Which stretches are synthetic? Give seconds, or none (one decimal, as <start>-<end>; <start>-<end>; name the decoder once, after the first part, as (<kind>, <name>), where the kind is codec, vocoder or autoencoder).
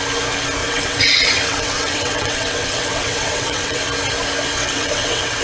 0.6-3.8 (vocoder, WaveNeXt); 4.6-5.4